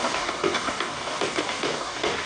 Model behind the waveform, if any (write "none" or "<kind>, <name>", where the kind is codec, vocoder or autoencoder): codec, DAC